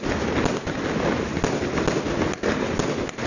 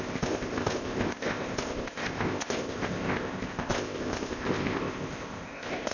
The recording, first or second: first